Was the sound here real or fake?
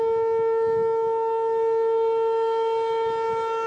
real